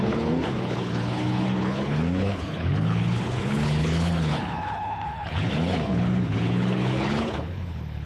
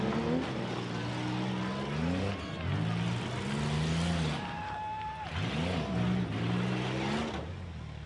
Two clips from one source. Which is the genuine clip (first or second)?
second